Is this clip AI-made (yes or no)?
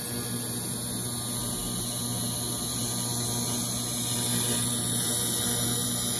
no